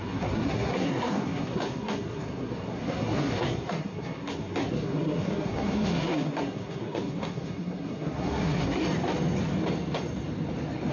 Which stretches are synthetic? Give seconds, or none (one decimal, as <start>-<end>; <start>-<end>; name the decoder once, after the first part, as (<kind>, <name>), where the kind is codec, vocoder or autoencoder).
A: 0.0-8.8 (codec, SNAC)